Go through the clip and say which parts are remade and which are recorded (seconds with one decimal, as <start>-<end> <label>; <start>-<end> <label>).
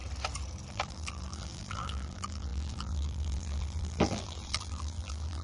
0.0-0.7 recorded; 0.7-5.4 remade